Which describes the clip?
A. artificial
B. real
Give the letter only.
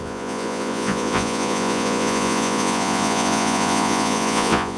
A